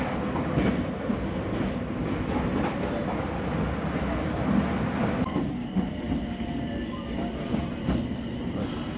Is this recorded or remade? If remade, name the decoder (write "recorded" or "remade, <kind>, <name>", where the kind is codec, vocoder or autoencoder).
recorded